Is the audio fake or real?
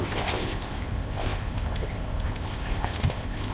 fake